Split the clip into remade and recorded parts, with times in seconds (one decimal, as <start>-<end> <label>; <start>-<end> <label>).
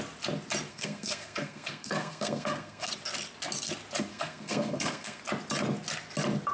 0.0-0.7 recorded; 0.7-2.9 remade; 2.9-4.1 recorded; 4.1-5.2 remade; 5.2-6.5 recorded